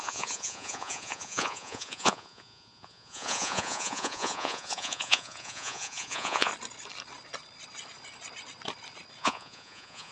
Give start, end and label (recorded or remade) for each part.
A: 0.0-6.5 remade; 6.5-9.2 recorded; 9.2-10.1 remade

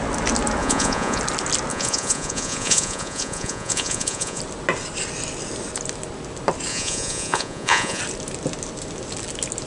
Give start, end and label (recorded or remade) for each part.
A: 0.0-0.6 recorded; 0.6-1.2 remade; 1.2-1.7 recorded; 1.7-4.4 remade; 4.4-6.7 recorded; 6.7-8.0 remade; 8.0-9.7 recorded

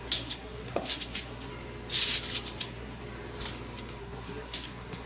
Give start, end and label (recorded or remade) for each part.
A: 0.0-1.5 remade; 1.5-2.6 recorded; 2.6-3.0 remade; 3.0-4.0 recorded; 4.0-5.1 remade

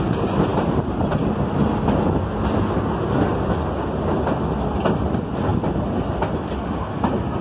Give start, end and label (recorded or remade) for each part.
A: 0.0-7.4 recorded

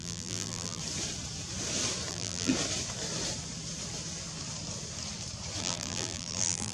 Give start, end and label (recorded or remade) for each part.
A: 0.0-0.8 remade; 0.8-2.1 recorded; 2.1-2.5 remade; 2.5-5.6 recorded; 5.6-6.7 remade